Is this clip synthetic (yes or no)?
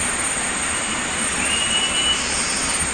no